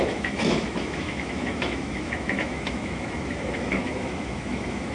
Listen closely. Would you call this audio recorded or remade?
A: remade